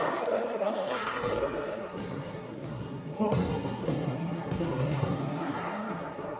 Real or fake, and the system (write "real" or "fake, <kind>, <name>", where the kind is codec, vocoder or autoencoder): fake, codec, SNAC